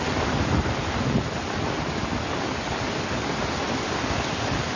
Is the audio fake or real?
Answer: real